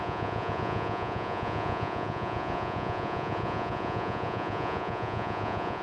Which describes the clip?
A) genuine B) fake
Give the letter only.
B